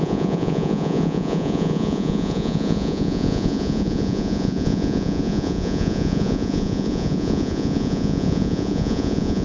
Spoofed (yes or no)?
yes